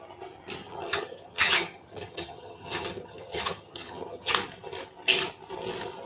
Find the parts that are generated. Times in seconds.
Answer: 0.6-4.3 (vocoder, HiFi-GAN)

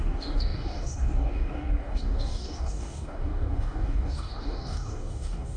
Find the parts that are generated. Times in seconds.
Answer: 0.0-5.6 (codec, DAC)

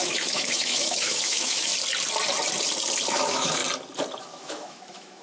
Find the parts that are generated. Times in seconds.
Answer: 0.0-1.7 (autoencoder, DAC-VAE); 3.1-3.6; 4.2-5.2

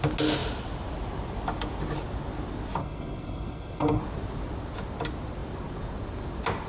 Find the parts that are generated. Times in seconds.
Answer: 2.8-4.0 (codec, SNAC)

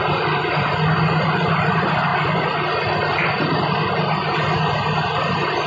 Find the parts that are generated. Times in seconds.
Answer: none

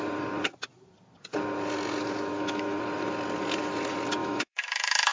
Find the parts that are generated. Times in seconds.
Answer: 2.3-2.8 (autoencoder, DAC-VAE); 4.2-5.1